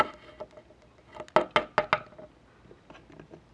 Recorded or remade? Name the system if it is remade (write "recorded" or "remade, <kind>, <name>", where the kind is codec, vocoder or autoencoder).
recorded